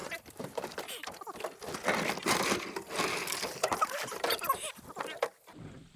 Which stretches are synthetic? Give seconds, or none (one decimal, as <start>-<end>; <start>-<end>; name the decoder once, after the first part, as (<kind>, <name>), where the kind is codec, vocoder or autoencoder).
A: 0.0-1.2 (vocoder, BigVGAN v2)